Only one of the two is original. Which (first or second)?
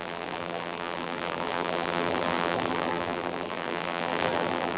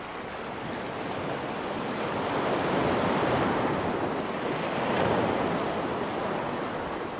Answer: second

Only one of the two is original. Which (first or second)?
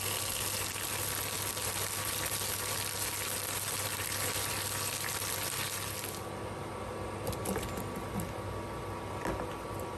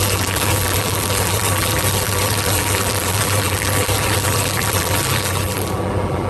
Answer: first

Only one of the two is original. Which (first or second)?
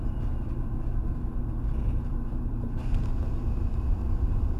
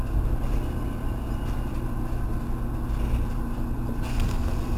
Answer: second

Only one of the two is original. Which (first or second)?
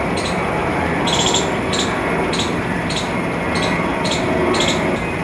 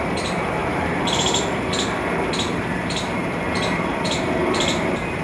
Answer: first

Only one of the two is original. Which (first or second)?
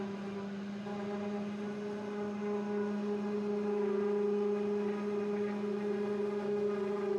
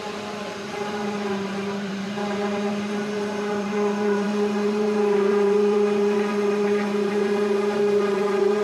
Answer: first